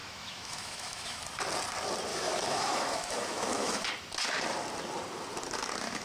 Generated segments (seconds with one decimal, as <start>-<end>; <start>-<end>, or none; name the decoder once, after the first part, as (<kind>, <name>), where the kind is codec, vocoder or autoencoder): 0.0-1.2 (autoencoder, DAC-VAE); 2.1-3.9